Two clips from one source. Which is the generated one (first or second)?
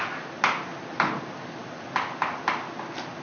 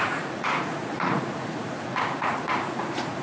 second